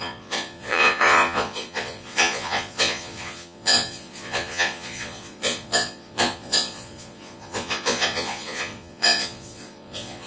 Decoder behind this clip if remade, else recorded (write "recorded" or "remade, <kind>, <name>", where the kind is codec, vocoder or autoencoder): remade, vocoder, Vocos